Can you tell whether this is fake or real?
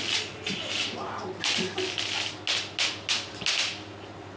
real